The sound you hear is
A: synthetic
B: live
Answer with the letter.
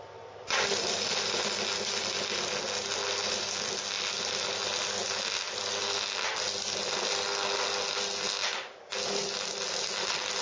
B